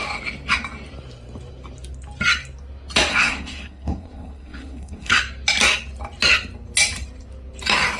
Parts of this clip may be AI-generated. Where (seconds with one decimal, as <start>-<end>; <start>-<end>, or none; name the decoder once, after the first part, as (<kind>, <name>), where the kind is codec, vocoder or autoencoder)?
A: 3.1-5.2 (codec, SNAC)